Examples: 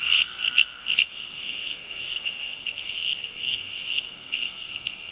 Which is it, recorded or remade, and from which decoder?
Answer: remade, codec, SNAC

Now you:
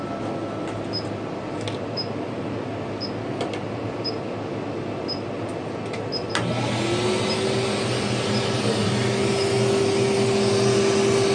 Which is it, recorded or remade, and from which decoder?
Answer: recorded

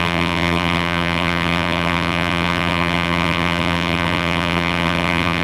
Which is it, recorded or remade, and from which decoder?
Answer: remade, vocoder, BigVGAN v2